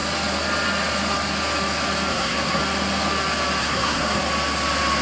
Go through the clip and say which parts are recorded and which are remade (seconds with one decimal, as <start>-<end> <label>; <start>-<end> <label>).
0.0-2.1 recorded; 2.1-2.6 remade; 2.6-3.6 recorded; 3.6-4.2 remade; 4.2-5.0 recorded